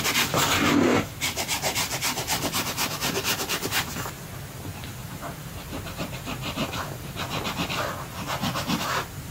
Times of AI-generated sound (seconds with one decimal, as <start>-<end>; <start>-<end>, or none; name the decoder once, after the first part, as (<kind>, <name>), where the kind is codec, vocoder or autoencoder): 0.9-3.9 (vocoder, BigVGAN v2); 5.0-7.2